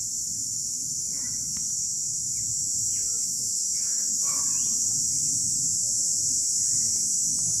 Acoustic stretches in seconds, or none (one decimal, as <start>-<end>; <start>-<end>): 0.0-0.4; 1.2-3.3; 4.4-7.6